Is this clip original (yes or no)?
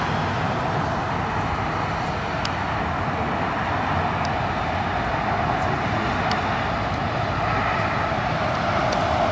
yes